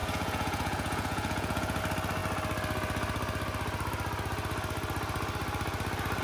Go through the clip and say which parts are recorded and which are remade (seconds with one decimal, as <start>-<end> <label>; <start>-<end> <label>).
0.0-1.8 remade; 1.8-6.2 recorded